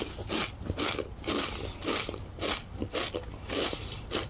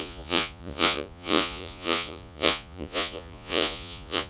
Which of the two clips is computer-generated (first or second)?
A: second